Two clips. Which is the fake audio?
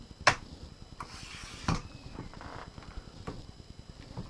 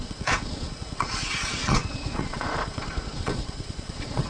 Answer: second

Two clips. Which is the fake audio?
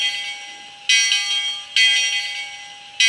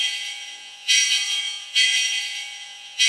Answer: second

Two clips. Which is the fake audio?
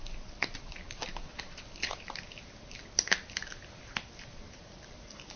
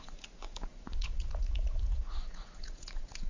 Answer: second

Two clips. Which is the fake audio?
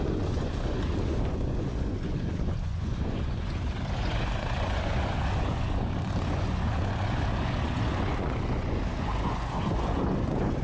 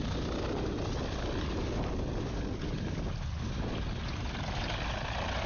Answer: first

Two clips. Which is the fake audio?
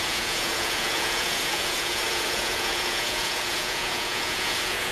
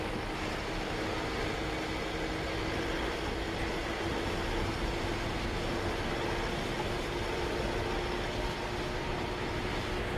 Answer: first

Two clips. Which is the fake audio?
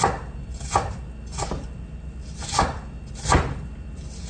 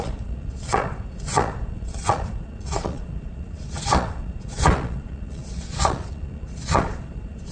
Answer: second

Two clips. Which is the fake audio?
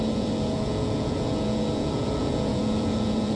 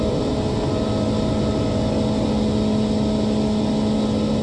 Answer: first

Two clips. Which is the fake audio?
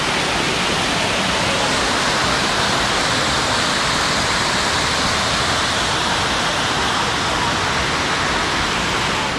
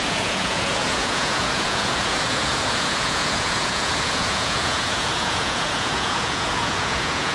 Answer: second